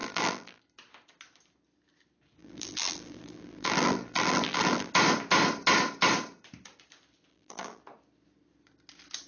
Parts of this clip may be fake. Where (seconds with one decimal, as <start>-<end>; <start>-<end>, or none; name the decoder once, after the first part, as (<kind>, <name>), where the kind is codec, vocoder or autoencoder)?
0.0-0.6 (vocoder, BigVGAN v2); 2.4-4.9; 7.3-7.8

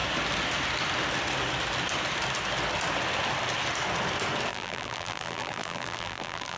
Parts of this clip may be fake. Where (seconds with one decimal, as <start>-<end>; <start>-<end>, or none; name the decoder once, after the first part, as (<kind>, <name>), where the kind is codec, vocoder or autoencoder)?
4.5-6.6 (vocoder, BigVGAN v2)

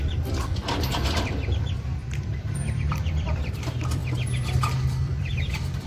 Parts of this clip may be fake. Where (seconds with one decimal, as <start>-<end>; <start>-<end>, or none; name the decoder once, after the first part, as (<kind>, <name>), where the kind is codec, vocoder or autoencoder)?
0.0-0.6 (vocoder, BigVGAN v2); 1.2-5.9

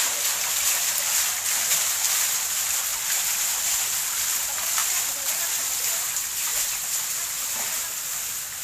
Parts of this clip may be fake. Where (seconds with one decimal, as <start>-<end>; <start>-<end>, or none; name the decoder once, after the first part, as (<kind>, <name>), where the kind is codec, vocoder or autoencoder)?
2.9-3.6 (vocoder, BigVGAN v2); 4.8-5.3; 6.5-8.2

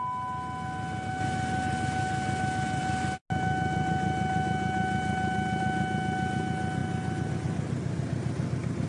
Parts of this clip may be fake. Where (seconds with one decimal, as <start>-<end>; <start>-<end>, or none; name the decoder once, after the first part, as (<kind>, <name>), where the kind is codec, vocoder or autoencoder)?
none

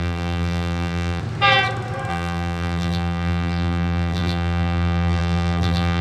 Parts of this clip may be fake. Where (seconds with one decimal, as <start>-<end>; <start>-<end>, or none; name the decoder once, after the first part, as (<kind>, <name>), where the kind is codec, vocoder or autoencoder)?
0.0-1.2 (vocoder, BigVGAN v2); 2.1-6.0

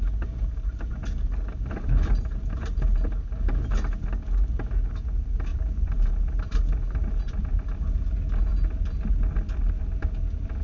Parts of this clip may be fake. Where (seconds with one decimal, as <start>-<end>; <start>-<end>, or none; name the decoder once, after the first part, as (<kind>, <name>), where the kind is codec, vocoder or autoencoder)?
0.9-3.1 (vocoder, BigVGAN v2); 5.5-7.1